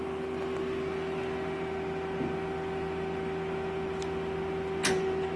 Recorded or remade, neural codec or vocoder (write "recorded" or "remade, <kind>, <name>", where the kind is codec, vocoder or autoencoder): recorded